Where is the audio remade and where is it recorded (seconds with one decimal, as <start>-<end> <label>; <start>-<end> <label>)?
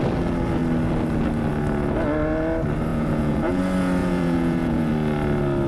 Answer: 0.0-2.9 recorded; 2.9-3.6 remade; 3.6-4.0 recorded; 4.0-4.9 remade; 4.9-5.7 recorded